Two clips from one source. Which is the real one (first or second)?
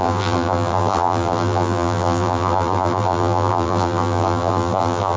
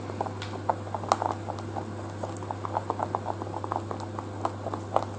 second